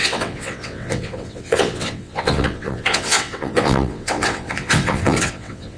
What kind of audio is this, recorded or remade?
remade